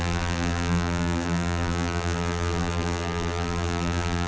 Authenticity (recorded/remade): remade